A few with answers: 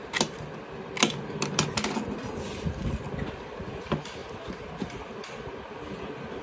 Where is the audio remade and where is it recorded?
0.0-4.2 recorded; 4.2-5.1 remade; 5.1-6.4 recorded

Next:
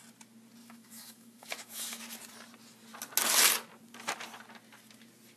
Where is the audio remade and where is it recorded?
0.0-0.6 recorded; 0.6-2.0 remade; 2.0-5.4 recorded

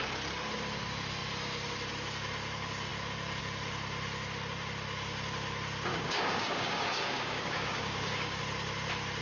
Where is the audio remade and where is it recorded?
0.0-5.9 recorded; 5.9-8.4 remade; 8.4-9.2 recorded

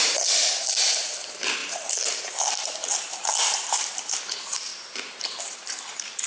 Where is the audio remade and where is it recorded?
0.0-6.3 remade

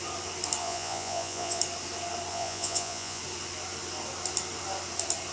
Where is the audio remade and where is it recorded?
0.0-0.6 recorded; 0.6-1.6 remade; 1.6-2.3 recorded; 2.3-3.2 remade; 3.2-5.3 recorded

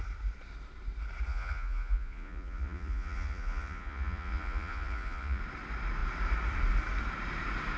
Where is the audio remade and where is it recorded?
0.0-1.3 recorded; 1.3-5.4 remade; 5.4-7.8 recorded